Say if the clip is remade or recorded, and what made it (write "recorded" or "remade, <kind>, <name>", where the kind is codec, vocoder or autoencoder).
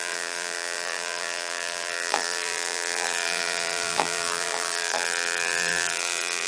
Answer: remade, vocoder, BigVGAN v2